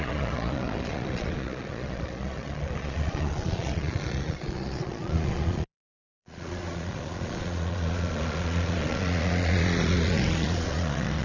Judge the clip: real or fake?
fake